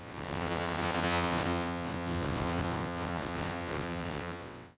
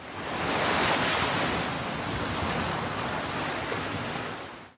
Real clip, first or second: second